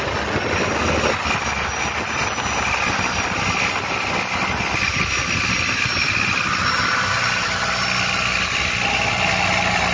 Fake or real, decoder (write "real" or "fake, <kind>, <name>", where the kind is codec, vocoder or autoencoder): real